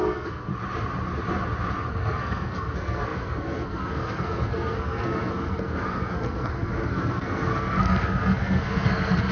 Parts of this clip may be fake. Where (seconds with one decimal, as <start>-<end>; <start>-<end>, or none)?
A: 0.0-0.5; 1.9-9.3

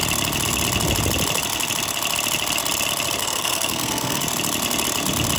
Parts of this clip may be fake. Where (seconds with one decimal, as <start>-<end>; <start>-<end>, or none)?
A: 3.2-4.2